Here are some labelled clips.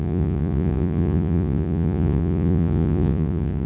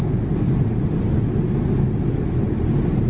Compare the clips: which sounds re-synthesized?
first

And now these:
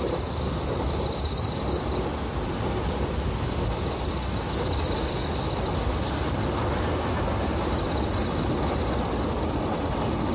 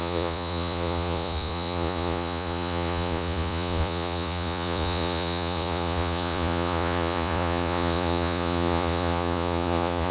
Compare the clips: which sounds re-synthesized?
second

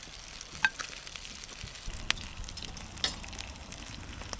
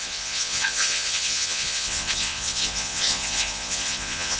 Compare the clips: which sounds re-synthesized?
second